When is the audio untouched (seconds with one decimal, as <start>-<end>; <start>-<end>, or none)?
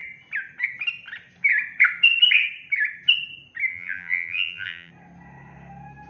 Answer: 0.0-3.7; 4.9-6.1